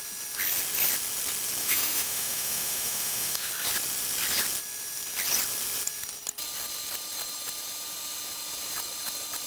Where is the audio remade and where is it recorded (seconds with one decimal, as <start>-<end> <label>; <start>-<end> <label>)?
0.0-1.6 recorded; 1.6-3.5 remade; 3.5-9.5 recorded